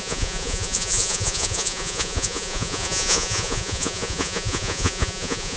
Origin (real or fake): fake